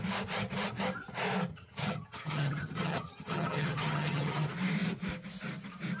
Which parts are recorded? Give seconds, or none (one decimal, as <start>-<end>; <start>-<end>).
0.0-1.5; 4.3-6.0